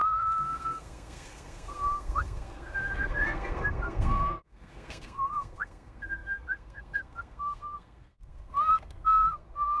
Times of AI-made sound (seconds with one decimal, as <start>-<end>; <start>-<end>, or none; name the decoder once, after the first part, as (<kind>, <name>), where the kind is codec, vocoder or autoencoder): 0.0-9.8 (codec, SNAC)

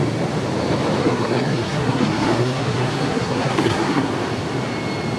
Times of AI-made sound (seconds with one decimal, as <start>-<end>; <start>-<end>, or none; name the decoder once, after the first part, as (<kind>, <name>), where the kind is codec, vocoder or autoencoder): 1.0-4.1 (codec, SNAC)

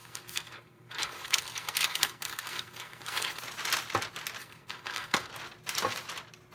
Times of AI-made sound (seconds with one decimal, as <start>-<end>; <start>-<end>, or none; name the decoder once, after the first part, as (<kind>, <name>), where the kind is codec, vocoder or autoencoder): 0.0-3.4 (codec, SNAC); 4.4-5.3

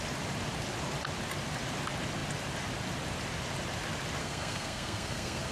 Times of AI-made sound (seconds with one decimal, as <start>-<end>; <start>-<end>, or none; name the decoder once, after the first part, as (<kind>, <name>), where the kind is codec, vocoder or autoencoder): 4.2-5.5 (codec, SNAC)